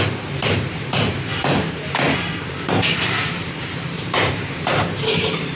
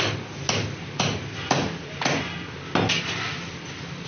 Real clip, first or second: second